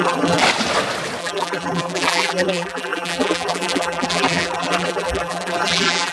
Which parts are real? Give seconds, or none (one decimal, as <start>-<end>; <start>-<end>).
0.4-1.2